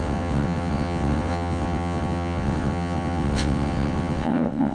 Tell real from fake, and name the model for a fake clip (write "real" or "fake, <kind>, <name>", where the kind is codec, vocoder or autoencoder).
fake, vocoder, WaveNeXt